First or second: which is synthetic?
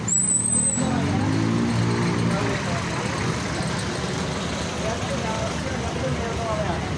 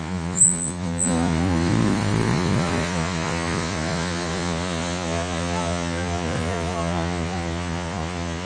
second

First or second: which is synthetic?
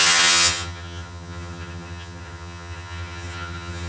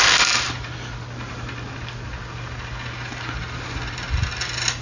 first